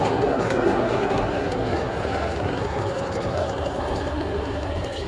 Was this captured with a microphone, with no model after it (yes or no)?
no